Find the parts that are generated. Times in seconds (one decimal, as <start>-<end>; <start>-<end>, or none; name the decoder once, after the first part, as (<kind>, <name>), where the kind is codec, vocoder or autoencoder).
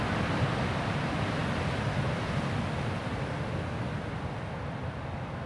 none